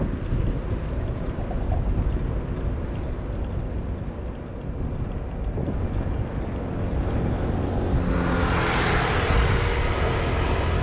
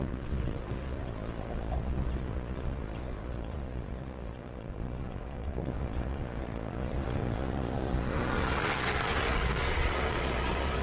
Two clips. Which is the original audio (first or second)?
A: first